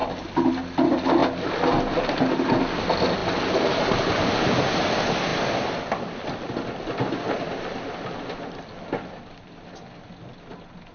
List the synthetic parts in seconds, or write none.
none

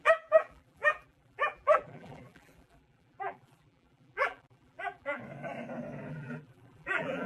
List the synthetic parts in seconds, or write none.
0.0-5.2 (vocoder, BigVGAN v2); 6.1-7.3

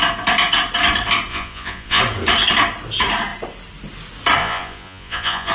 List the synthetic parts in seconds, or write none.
1.3-2.0 (vocoder, Vocos); 4.4-5.5

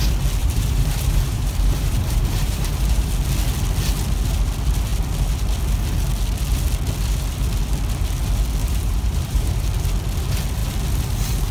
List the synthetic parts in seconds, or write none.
0.4-3.1 (vocoder, BigVGAN v2); 8.6-9.7